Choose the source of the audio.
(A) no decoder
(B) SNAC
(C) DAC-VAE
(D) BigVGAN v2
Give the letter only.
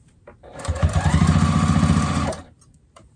D